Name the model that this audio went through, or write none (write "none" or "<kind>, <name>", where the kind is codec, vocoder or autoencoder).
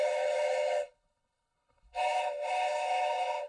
codec, HILCodec